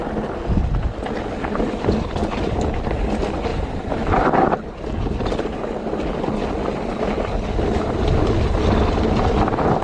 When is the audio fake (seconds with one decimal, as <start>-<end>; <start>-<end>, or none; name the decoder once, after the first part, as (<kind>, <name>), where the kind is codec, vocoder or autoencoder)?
2.2-3.0 (vocoder, BigVGAN v2); 3.5-4.2